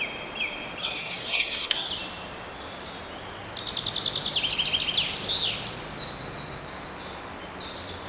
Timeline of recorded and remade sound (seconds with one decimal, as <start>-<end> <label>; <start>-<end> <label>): 0.0-0.8 recorded; 0.8-1.9 remade; 1.9-8.1 recorded